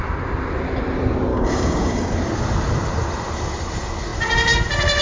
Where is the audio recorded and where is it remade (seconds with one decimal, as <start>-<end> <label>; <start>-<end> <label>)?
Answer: 0.0-1.3 recorded; 1.3-2.1 remade; 2.1-5.0 recorded

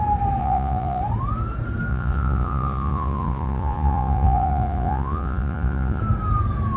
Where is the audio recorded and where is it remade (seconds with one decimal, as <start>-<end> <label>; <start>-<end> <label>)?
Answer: 0.0-0.4 recorded; 0.4-1.0 remade; 1.0-1.9 recorded; 1.9-6.0 remade; 6.0-6.8 recorded

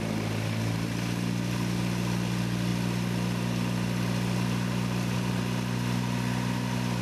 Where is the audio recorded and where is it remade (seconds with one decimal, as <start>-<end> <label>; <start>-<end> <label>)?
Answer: 0.0-7.0 recorded

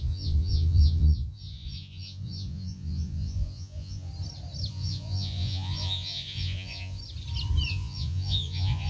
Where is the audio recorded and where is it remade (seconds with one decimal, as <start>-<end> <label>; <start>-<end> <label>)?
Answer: 0.0-4.1 remade; 4.1-4.7 recorded; 4.7-7.0 remade; 7.0-7.7 recorded; 7.7-8.9 remade

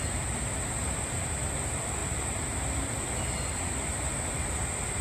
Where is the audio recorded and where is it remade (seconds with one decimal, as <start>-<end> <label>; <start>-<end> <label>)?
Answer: 0.0-5.0 recorded

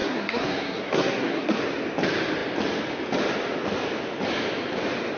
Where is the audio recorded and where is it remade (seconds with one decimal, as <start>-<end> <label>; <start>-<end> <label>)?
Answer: 0.0-1.6 remade; 1.6-5.2 recorded